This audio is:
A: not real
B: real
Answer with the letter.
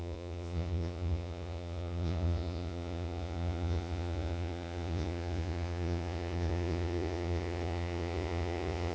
A